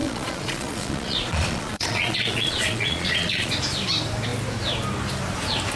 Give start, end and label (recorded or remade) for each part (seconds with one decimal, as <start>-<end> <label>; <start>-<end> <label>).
0.0-3.5 remade; 3.5-5.8 recorded